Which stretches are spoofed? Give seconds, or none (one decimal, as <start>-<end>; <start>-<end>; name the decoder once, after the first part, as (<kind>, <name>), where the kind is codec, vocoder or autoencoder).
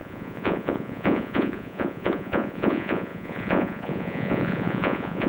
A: 0.0-5.3 (vocoder, Vocos)